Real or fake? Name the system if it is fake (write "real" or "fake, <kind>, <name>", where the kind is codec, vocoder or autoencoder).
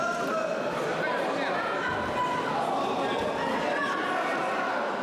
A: real